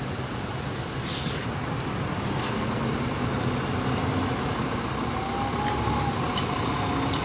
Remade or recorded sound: recorded